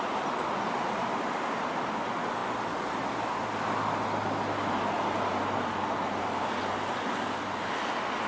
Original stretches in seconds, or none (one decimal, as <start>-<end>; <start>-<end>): 0.0-8.3